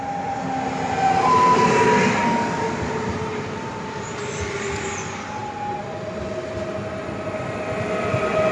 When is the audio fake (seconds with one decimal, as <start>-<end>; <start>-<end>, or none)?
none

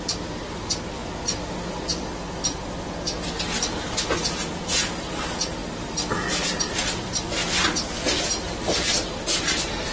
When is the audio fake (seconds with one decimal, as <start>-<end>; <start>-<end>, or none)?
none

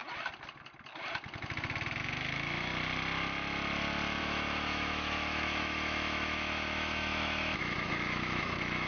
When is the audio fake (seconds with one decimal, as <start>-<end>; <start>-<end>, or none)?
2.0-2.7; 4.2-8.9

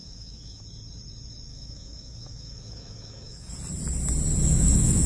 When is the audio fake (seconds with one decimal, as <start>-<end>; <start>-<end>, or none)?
0.0-0.6; 1.5-3.5; 4.4-5.1

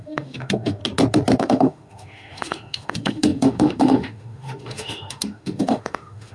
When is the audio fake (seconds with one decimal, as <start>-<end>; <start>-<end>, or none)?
0.0-0.8; 1.4-6.3

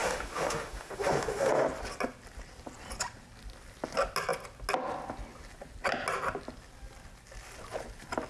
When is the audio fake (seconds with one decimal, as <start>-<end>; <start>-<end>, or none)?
0.0-1.5